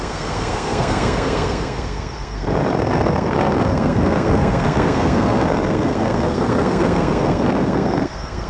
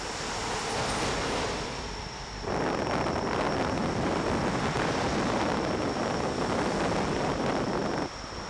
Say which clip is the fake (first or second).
first